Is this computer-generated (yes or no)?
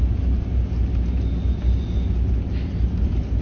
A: no